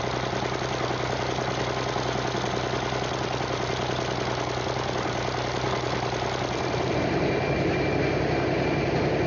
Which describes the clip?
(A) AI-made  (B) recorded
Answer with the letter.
B